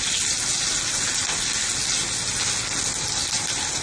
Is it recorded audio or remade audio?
recorded